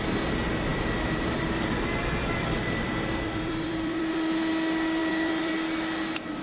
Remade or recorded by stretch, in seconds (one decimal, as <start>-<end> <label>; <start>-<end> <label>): 0.0-0.7 recorded; 0.7-4.5 remade; 4.5-5.0 recorded; 5.0-5.5 remade; 5.5-6.4 recorded